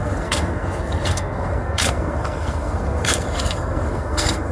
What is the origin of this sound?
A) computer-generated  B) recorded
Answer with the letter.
A